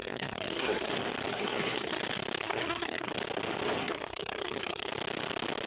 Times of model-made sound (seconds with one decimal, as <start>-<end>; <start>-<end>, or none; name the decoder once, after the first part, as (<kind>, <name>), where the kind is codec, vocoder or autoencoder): 0.0-0.9 (codec, SNAC); 1.3-2.0; 2.4-3.1; 3.8-4.9